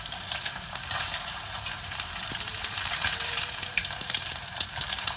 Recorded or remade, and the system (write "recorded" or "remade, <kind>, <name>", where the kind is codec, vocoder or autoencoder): remade, vocoder, BigVGAN v2